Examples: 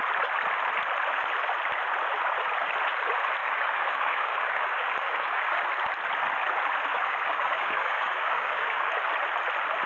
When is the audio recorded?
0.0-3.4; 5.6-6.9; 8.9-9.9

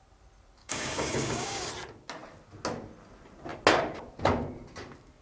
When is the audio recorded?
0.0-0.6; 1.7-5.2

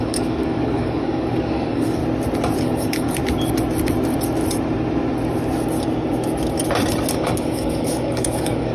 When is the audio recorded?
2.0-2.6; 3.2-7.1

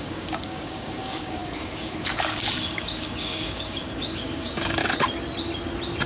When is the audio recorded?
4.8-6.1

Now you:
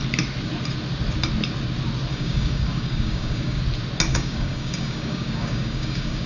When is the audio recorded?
0.0-2.1; 3.6-4.1